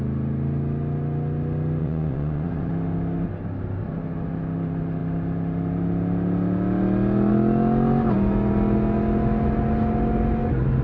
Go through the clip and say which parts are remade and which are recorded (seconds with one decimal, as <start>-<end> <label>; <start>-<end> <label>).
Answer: 0.0-1.8 recorded; 1.8-2.7 remade; 2.7-10.8 recorded